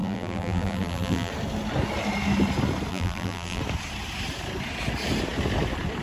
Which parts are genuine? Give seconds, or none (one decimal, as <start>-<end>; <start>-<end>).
1.3-2.9; 3.6-6.0